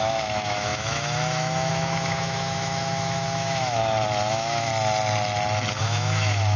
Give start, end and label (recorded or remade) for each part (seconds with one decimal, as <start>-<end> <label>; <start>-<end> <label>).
0.0-3.8 remade; 3.8-4.3 recorded; 4.3-4.7 remade; 4.7-5.8 recorded; 5.8-6.6 remade